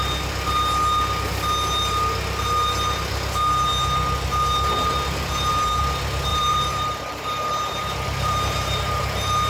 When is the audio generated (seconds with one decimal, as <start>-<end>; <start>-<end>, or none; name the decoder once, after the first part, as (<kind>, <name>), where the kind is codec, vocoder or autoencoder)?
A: 6.3-9.5 (vocoder, BigVGAN v2)